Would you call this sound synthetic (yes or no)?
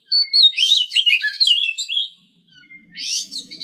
yes